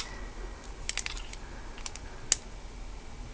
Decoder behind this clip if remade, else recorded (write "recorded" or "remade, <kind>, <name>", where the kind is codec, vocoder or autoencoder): recorded